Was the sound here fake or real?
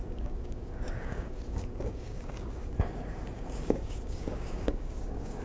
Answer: fake